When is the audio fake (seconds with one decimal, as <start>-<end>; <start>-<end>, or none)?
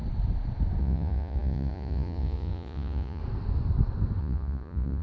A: 0.8-3.2; 4.2-5.0